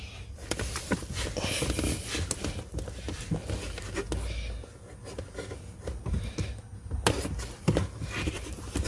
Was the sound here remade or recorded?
recorded